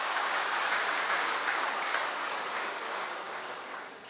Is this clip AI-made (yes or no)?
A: yes